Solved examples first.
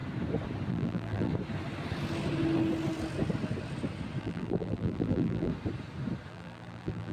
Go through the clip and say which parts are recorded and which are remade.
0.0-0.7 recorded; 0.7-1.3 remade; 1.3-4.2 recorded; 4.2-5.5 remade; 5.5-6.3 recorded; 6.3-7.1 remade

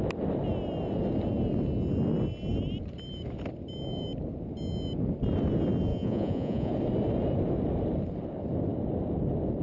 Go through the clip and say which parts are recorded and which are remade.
0.0-5.9 recorded; 5.9-6.7 remade; 6.7-9.6 recorded

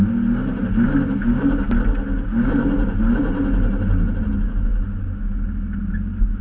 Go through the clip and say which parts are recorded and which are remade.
0.0-6.4 recorded

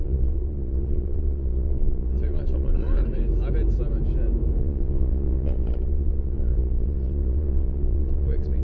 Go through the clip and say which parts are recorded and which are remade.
0.0-3.0 remade; 3.0-4.6 recorded; 4.6-8.6 remade

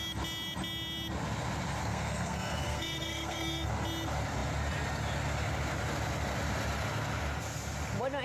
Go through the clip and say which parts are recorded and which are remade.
0.0-1.8 recorded; 1.8-3.7 remade; 3.7-8.2 recorded

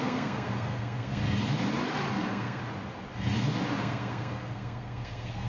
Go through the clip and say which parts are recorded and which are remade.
0.0-1.2 remade; 1.2-2.1 recorded; 2.1-2.6 remade; 2.6-3.8 recorded; 3.8-5.5 remade

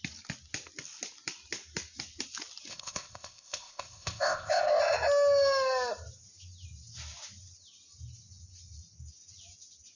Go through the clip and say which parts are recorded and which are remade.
0.0-2.7 recorded; 2.7-4.8 remade; 4.8-10.0 recorded

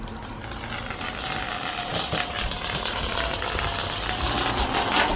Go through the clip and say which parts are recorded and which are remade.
0.0-5.2 recorded